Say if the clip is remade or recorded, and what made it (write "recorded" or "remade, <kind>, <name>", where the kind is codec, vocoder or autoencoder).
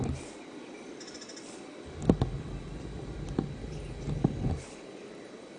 recorded